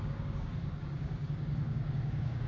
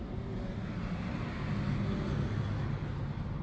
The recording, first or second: second